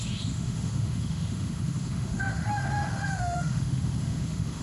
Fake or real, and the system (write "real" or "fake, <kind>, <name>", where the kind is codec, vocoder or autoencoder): fake, autoencoder, DAC-VAE